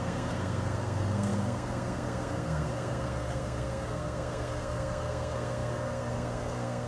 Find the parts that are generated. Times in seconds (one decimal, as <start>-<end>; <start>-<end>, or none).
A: 0.0-6.9